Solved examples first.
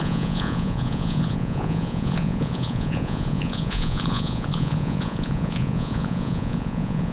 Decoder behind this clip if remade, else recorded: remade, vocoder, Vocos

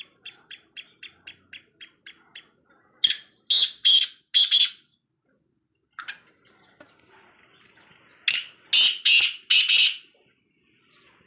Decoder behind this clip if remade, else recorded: recorded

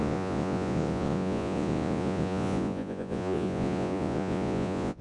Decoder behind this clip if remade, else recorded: remade, vocoder, Vocos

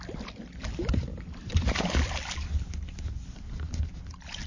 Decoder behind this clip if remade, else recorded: recorded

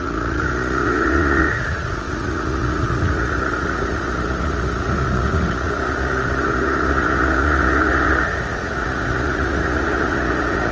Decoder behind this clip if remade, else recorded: remade, vocoder, Vocos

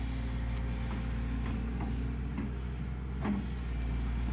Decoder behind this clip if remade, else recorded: recorded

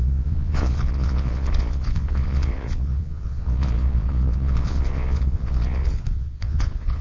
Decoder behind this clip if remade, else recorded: remade, vocoder, Vocos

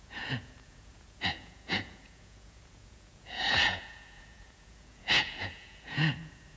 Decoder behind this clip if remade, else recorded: remade, vocoder, Vocos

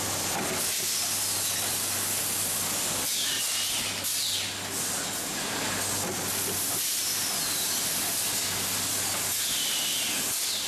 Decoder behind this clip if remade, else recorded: recorded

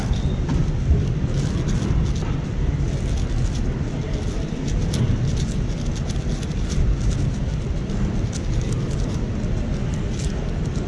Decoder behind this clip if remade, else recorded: recorded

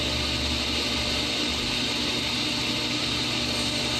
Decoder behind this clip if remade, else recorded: recorded